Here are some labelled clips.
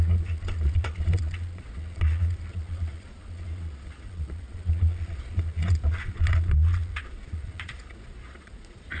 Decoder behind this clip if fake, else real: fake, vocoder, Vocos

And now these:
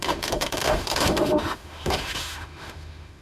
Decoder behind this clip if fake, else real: fake, autoencoder, DAC-VAE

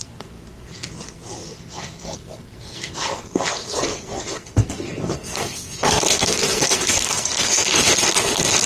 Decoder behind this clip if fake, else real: fake, codec, SNAC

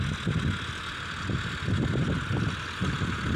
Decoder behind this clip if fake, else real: real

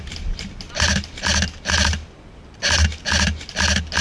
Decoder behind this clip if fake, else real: real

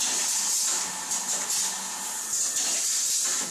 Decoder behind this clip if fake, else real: real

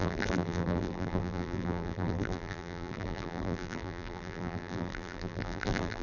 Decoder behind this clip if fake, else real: fake, vocoder, BigVGAN v2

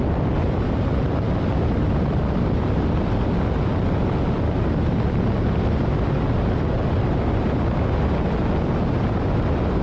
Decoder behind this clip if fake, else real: real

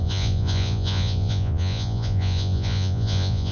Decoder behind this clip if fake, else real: fake, vocoder, Vocos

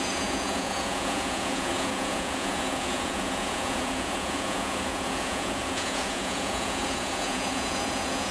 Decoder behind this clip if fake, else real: fake, vocoder, Vocos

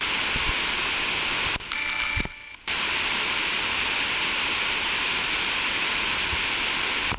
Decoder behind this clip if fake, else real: real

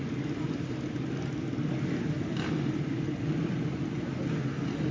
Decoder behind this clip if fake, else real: real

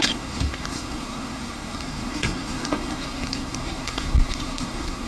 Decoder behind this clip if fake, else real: fake, codec, SNAC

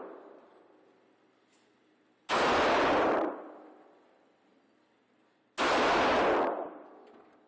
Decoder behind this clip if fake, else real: real